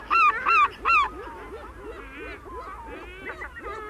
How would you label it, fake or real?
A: real